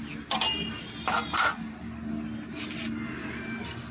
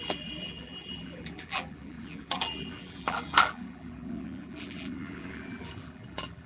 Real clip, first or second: first